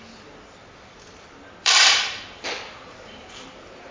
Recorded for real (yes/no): no